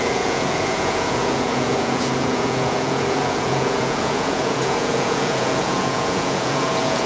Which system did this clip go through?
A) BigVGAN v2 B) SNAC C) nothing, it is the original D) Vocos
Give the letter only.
D